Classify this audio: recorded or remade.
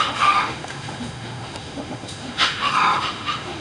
remade